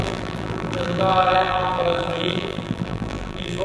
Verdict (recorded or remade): remade